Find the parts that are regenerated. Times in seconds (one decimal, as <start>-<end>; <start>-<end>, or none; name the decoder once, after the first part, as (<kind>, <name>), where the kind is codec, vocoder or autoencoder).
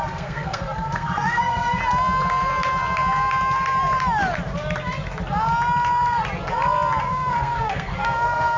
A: 0.0-1.8 (codec, SNAC); 7.0-8.6